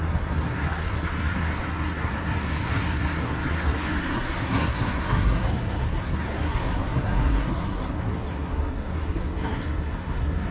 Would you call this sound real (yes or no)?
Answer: no